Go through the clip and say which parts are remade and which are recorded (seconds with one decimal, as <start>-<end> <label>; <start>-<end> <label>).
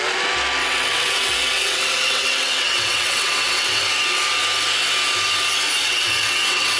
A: 0.0-0.6 recorded; 0.6-3.8 remade; 3.8-5.8 recorded; 5.8-6.8 remade